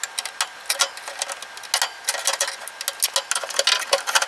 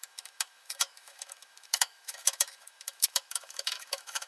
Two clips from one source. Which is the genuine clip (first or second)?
first